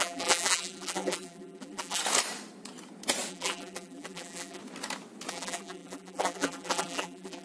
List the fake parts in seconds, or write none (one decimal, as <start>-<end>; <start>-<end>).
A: 0.0-2.0; 3.3-4.6; 5.3-7.4